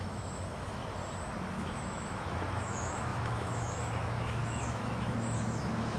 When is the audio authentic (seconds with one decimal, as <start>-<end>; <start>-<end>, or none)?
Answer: 0.8-1.6

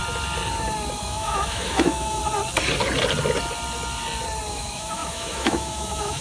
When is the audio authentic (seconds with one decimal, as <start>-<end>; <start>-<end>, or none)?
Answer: 0.0-1.0; 2.2-4.5